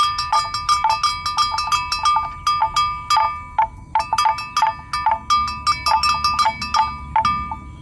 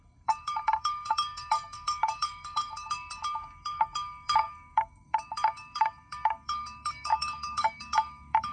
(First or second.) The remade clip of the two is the second